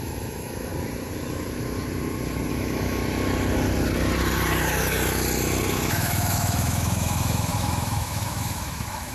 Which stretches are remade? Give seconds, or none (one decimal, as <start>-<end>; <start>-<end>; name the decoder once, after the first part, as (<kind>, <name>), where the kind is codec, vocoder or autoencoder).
0.0-0.7 (autoencoder, DAC-VAE); 2.5-3.0; 5.7-9.1